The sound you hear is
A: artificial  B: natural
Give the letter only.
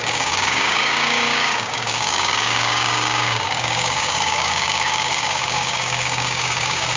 A